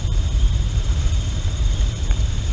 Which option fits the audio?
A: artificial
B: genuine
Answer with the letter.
A